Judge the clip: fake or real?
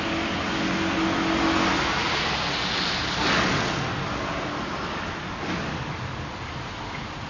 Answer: real